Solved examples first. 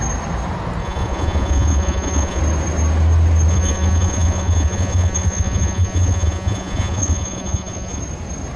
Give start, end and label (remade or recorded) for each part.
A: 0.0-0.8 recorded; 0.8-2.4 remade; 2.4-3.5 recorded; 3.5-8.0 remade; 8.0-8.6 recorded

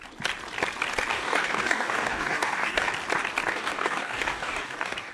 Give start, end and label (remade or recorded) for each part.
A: 0.0-1.1 recorded; 1.1-2.9 remade; 2.9-3.5 recorded; 3.5-5.1 remade